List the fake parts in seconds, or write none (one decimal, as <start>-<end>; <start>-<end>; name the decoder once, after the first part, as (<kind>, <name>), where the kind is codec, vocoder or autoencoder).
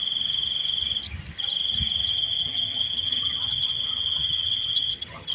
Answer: 2.1-5.3 (vocoder, HiFi-GAN)